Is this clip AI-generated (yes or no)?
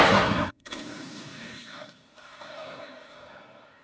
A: yes